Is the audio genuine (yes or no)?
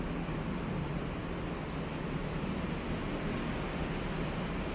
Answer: yes